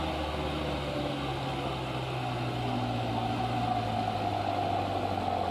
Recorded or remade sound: recorded